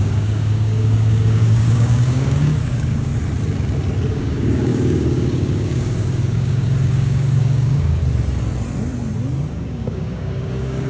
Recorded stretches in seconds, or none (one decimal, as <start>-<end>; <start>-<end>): 3.1-4.1; 8.0-9.5